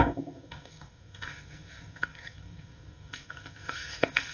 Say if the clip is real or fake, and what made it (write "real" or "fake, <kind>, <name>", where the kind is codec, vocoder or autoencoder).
fake, codec, SNAC